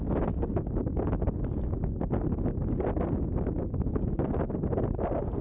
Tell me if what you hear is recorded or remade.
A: recorded